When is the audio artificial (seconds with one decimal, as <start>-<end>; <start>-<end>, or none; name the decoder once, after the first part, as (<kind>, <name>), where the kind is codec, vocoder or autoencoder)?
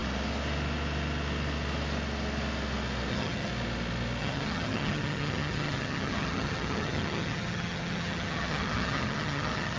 3.1-3.5 (vocoder, HiFi-GAN); 4.2-9.8